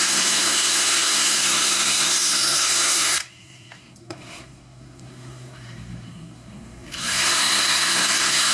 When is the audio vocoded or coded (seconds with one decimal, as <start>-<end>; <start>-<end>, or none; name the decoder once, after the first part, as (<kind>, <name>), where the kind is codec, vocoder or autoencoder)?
0.0-8.5 (codec, SNAC)